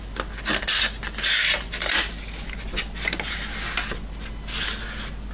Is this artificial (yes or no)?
no